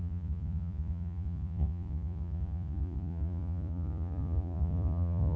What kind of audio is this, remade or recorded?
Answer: remade